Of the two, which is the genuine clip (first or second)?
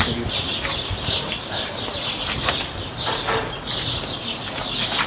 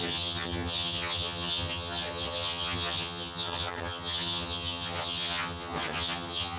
first